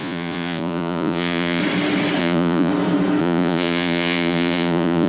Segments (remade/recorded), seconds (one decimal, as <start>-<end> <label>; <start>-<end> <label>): 0.0-1.6 remade; 1.6-2.2 recorded; 2.2-2.7 remade; 2.7-3.2 recorded; 3.2-5.1 remade